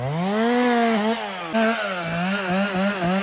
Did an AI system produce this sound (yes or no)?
no